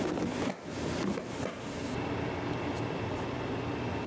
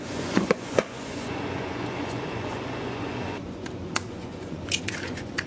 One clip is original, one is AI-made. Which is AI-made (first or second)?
second